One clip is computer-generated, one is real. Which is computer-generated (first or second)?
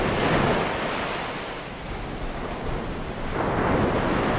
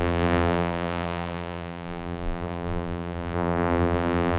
second